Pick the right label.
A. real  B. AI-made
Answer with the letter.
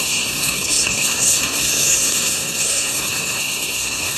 B